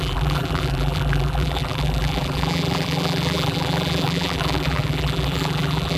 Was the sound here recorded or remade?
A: remade